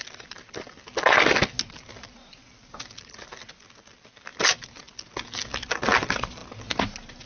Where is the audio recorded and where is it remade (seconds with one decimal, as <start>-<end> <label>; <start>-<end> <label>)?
0.0-7.3 recorded